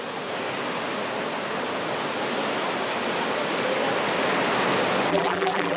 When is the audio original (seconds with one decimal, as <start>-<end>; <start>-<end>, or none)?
0.0-5.1